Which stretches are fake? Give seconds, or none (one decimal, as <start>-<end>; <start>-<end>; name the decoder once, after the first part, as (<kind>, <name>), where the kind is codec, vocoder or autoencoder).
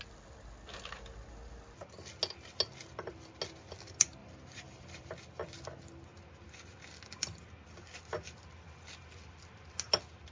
4.2-5.1 (vocoder, BigVGAN v2)